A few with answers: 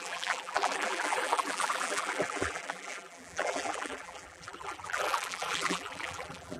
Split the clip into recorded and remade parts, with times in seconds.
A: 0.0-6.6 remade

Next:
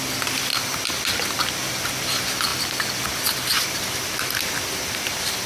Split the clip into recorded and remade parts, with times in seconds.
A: 0.0-5.5 recorded

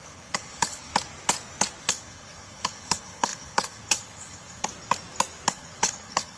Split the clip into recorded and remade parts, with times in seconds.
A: 0.0-0.9 remade; 0.9-1.8 recorded; 1.8-4.7 remade; 4.7-5.5 recorded; 5.5-6.4 remade

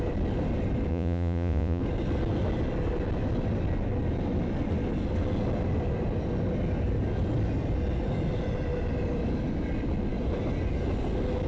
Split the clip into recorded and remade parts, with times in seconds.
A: 0.0-0.9 recorded; 0.9-1.8 remade; 1.8-11.5 recorded